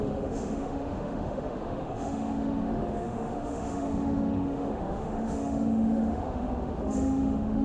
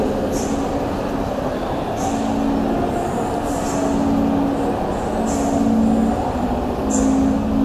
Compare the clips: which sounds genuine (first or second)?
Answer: second